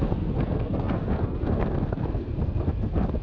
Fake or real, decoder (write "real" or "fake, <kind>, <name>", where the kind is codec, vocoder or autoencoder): fake, codec, SNAC